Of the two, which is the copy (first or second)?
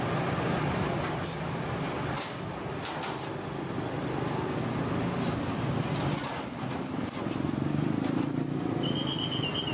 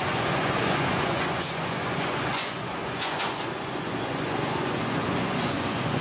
second